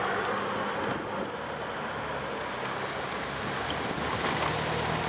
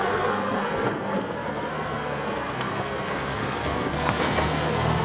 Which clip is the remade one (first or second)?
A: second